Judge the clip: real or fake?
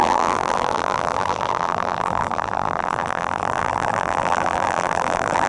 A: fake